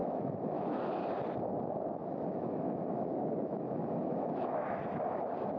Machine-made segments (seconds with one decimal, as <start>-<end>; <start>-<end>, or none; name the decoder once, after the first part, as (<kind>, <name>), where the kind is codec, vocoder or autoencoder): 0.0-1.0 (autoencoder, DAC-VAE); 2.0-4.8